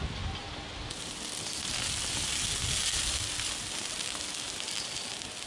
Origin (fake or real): real